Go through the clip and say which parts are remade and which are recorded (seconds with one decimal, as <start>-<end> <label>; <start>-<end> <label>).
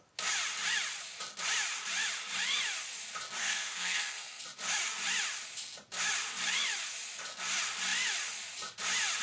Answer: 0.0-3.4 recorded; 3.4-4.4 remade; 4.4-9.2 recorded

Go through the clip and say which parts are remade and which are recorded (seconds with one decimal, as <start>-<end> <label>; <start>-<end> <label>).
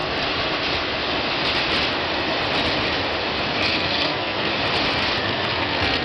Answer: 0.0-3.6 recorded; 3.6-4.5 remade; 4.5-5.2 recorded; 5.2-6.0 remade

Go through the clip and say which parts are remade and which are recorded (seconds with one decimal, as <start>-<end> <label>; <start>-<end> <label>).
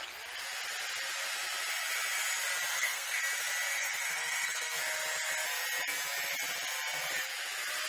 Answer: 0.0-2.7 recorded; 2.7-3.2 remade; 3.2-3.7 recorded; 3.7-4.8 remade; 4.8-7.9 recorded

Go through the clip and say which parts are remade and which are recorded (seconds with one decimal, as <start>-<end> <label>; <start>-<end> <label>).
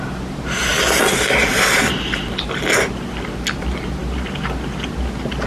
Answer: 0.0-5.5 recorded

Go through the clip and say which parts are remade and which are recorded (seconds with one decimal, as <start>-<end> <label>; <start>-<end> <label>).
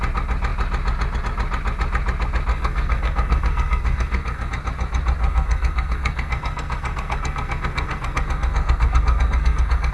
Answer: 0.0-2.5 recorded; 2.5-4.5 remade; 4.5-5.2 recorded; 5.2-9.9 remade